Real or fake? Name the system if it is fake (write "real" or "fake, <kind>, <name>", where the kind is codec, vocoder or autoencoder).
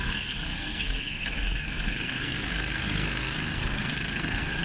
fake, codec, SNAC